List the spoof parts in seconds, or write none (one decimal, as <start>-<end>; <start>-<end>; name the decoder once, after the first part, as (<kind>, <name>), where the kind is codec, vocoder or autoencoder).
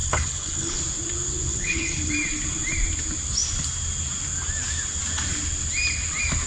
0.0-0.8 (codec, HILCodec); 1.5-2.1